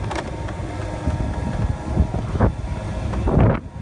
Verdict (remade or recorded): recorded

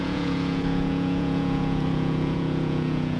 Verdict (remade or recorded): remade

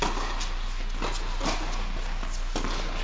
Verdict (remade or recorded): recorded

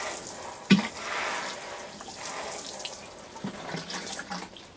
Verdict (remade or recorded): recorded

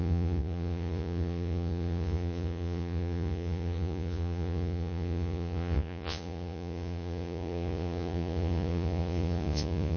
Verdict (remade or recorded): remade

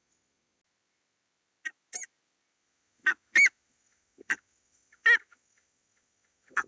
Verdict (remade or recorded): recorded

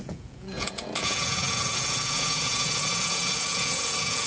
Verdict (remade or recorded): remade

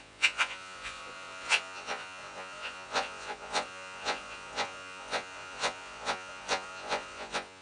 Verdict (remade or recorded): remade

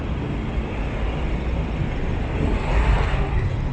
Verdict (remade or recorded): recorded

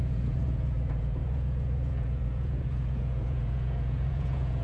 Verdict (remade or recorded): remade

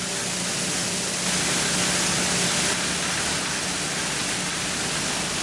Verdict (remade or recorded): recorded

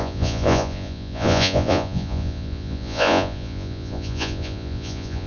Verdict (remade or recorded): remade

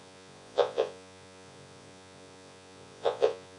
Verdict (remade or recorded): remade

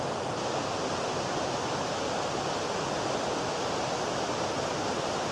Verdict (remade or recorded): recorded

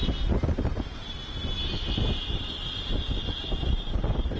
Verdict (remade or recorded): recorded